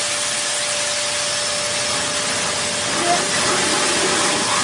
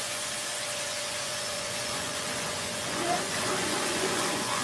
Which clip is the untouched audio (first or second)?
first